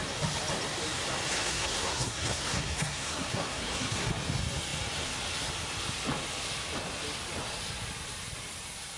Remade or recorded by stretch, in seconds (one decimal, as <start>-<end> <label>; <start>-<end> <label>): 0.0-1.3 recorded; 1.3-4.1 remade; 4.1-9.0 recorded